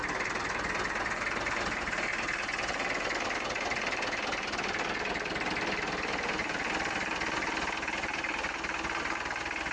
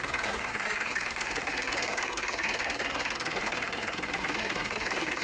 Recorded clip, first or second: first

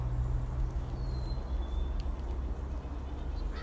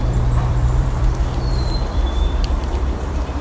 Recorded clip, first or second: first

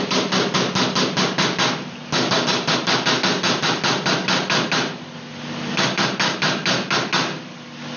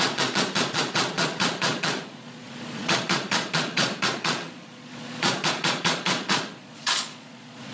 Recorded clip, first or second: first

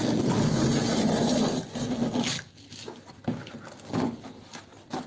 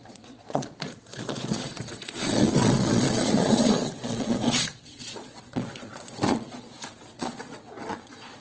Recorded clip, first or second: first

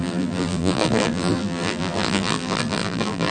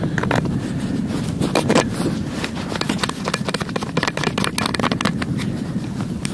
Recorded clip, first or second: second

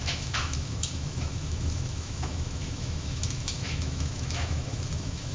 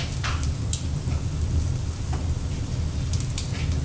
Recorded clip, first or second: second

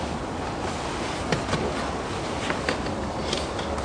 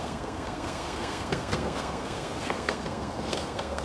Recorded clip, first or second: first